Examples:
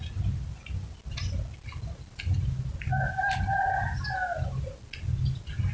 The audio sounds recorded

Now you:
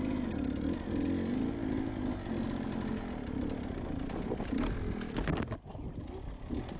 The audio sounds recorded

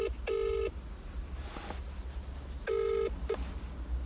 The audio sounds recorded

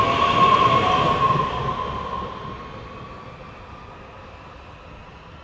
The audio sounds recorded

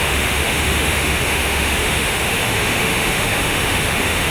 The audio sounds remade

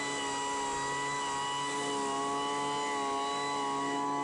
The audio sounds recorded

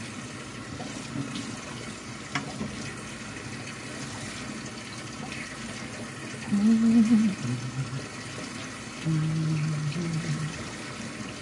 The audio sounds recorded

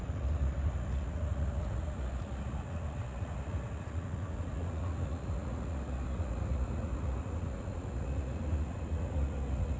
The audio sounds remade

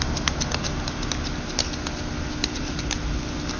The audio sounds recorded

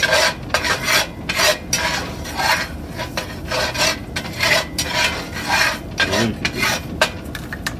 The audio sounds recorded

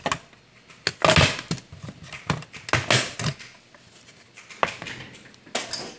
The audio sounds recorded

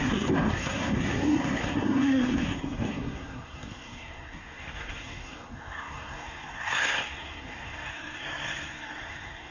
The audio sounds remade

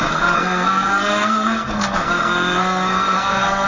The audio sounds remade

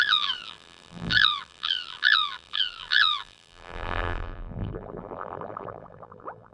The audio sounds remade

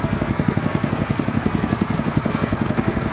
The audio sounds remade